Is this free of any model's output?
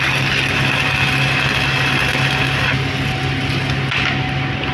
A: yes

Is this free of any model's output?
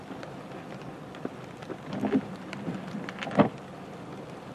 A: yes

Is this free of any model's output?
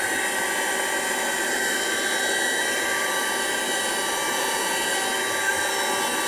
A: yes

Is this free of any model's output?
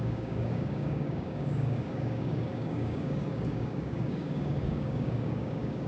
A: no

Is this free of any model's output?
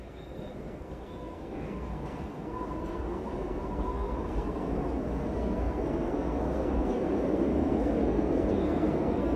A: no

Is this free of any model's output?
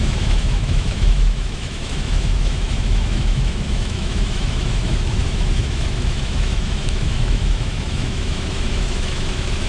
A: no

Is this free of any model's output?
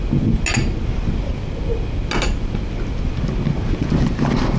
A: yes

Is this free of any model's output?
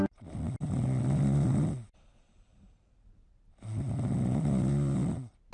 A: yes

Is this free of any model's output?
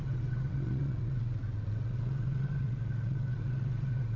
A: no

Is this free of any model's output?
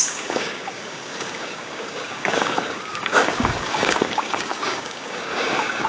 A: no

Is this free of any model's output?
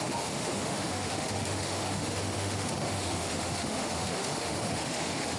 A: no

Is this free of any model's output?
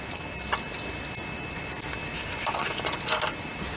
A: yes